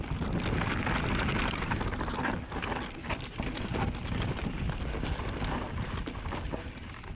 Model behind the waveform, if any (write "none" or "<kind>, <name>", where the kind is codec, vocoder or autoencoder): none